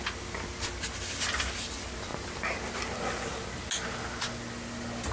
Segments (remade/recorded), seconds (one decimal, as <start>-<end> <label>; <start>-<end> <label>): 0.0-5.1 recorded